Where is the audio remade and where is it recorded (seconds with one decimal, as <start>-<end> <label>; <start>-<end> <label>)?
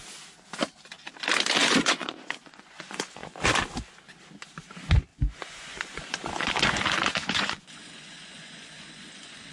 0.0-1.6 recorded; 1.6-3.4 remade; 3.4-5.1 recorded; 5.1-9.5 remade